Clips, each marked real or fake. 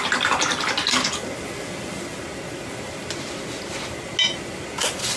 real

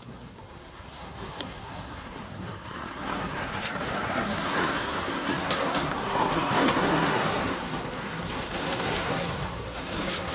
fake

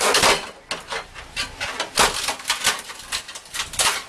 real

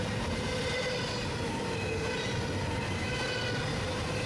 real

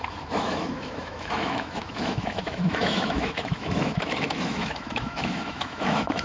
fake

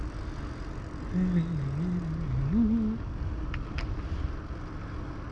real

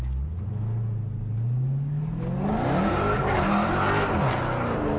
real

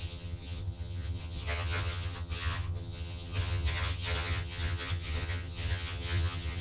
fake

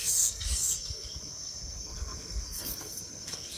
fake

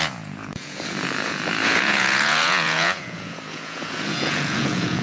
fake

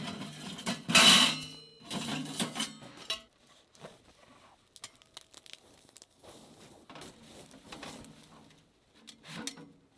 real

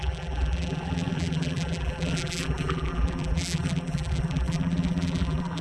fake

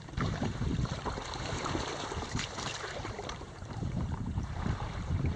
fake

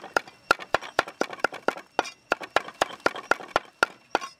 real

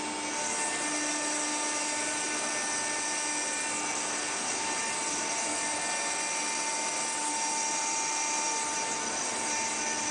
real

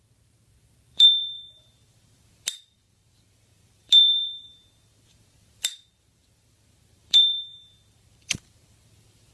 fake